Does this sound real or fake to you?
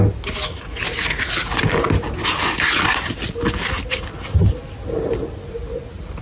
real